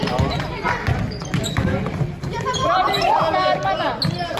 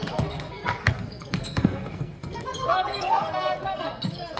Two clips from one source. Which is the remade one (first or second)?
second